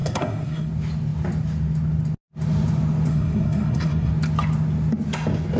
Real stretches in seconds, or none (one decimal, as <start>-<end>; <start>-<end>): 0.7-3.1; 4.1-5.6